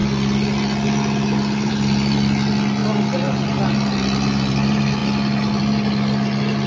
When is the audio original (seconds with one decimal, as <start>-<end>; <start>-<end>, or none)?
0.0-6.7